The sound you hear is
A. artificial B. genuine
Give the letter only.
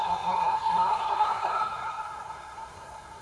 A